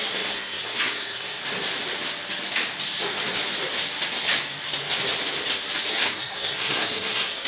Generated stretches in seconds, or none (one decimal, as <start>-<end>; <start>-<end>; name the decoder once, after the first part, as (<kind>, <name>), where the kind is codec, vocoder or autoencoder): 0.0-1.4 (codec, SNAC); 5.9-7.5